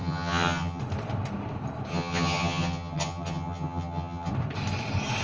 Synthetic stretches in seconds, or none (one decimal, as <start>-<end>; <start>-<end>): 0.0-0.8; 1.9-4.3